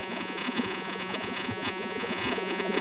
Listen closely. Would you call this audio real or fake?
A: fake